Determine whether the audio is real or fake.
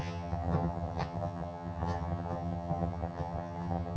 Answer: fake